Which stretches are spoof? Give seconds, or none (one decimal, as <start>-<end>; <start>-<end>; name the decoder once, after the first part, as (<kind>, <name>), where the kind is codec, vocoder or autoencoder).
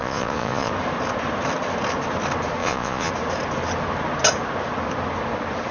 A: 0.0-0.7 (vocoder, Vocos); 2.6-3.1